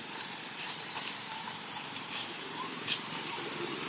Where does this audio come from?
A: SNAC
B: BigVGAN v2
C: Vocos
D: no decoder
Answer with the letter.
B